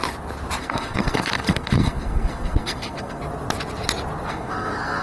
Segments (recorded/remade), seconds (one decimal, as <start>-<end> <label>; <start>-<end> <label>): 0.0-0.6 recorded; 0.6-3.2 remade; 3.2-4.3 recorded; 4.3-5.0 remade